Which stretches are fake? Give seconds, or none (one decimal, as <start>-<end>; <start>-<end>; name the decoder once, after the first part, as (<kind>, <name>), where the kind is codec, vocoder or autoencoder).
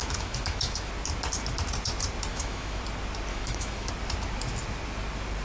0.0-0.9 (autoencoder, DAC-VAE); 2.3-2.8; 3.3-3.9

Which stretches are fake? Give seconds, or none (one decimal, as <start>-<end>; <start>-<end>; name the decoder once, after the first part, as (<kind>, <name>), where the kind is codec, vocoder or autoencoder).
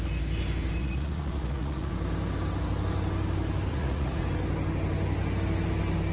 0.8-1.9 (vocoder, Vocos); 3.7-4.2